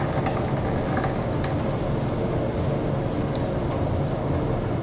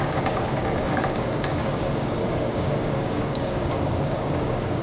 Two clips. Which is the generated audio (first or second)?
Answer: second